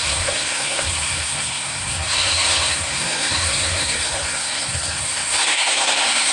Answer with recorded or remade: remade